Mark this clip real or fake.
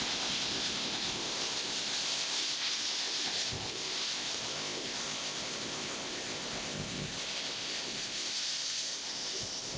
fake